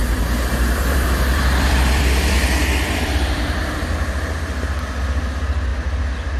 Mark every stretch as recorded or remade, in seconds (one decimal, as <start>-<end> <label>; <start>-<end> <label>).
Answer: 0.0-3.8 remade; 3.8-6.4 recorded

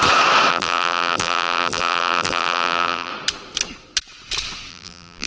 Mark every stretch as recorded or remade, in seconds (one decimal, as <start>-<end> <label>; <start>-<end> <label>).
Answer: 0.0-0.5 recorded; 0.5-3.1 remade; 3.1-4.7 recorded; 4.7-5.3 remade